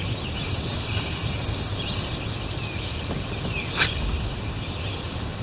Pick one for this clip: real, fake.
real